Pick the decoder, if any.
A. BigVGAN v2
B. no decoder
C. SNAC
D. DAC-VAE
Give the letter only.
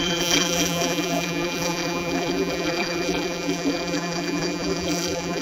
A